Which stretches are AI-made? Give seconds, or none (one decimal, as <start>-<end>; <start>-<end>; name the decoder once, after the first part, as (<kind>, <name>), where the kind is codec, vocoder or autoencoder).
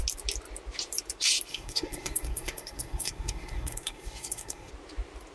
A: 1.5-4.7 (codec, SNAC)